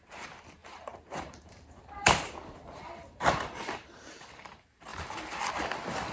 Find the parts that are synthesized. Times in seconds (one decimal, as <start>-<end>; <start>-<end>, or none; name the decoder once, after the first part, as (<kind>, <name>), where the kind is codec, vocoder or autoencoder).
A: 0.6-4.3 (vocoder, BigVGAN v2)